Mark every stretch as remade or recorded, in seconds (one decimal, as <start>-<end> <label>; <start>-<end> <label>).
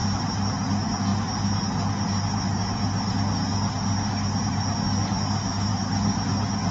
0.0-6.7 recorded